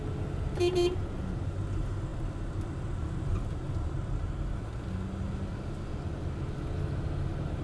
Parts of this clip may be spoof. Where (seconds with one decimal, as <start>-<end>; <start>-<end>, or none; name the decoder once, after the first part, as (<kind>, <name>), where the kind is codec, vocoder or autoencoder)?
none